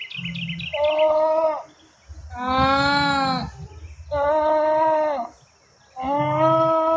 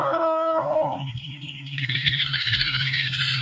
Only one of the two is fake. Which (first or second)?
second